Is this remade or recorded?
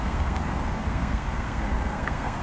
remade